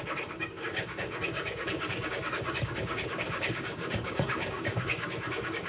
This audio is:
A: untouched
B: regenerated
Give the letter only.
B